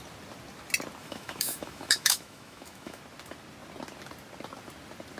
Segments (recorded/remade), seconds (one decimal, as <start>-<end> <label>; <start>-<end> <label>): 0.0-1.0 recorded; 1.0-3.0 remade; 3.0-5.2 recorded